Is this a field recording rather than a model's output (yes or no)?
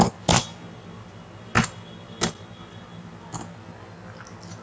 yes